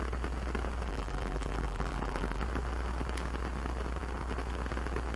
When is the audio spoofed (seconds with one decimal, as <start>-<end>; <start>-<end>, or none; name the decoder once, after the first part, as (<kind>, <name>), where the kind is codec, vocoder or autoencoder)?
0.9-2.4 (vocoder, BigVGAN v2)